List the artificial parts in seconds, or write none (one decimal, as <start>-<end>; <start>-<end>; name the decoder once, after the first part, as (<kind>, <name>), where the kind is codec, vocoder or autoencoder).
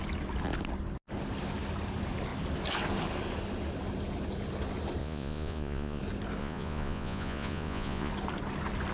5.0-6.0 (vocoder, Vocos); 6.4-8.1